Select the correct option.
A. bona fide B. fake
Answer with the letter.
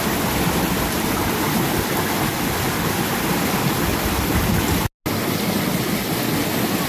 A